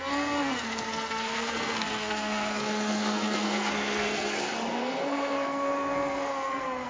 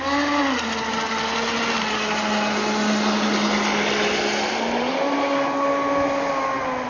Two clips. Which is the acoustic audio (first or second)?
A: second